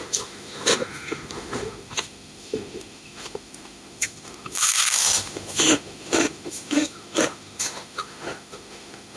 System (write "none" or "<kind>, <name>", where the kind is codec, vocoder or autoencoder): autoencoder, DAC-VAE